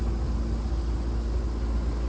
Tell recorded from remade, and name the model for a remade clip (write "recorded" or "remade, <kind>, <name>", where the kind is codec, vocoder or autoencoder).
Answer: recorded